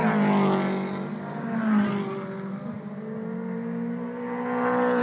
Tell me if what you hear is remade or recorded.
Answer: recorded